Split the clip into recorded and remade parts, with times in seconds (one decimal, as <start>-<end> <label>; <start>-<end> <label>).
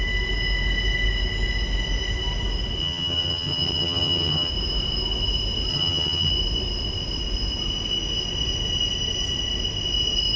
0.0-2.8 recorded; 2.8-4.5 remade; 4.5-5.7 recorded; 5.7-6.3 remade; 6.3-10.4 recorded